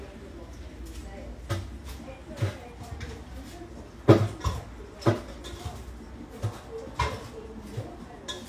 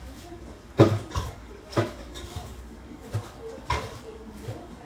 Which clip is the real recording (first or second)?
first